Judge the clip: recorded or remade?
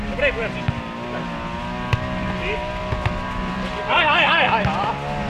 recorded